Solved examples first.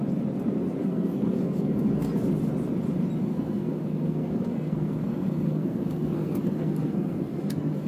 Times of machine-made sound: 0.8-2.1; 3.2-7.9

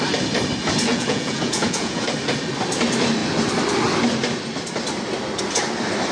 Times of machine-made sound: 0.9-2.0